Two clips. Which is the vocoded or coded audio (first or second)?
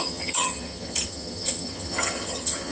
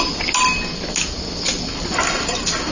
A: first